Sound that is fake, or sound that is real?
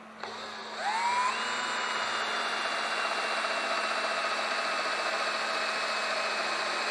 real